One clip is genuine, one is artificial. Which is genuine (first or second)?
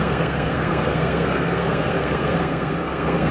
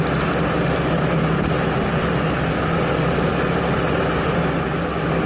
second